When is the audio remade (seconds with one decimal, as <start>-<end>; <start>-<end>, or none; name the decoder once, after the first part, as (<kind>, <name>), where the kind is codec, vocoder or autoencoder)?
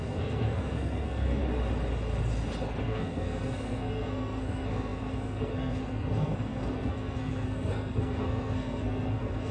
0.0-1.4 (codec, SNAC); 2.8-9.5